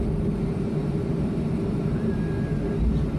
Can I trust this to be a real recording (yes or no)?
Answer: yes